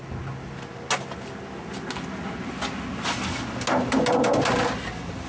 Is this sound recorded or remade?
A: recorded